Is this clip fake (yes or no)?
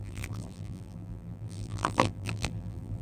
yes